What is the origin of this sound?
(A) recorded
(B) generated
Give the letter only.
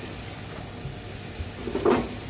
A